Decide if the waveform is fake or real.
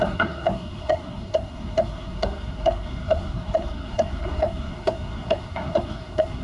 fake